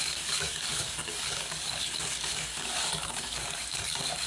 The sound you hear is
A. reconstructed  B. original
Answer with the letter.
A